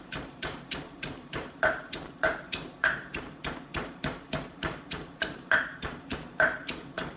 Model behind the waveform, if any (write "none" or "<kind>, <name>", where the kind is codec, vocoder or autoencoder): vocoder, BigVGAN v2